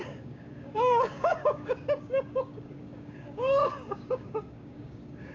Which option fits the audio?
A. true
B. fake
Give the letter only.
B